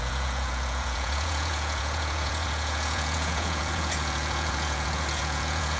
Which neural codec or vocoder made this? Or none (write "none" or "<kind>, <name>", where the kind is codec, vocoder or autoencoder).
vocoder, Vocos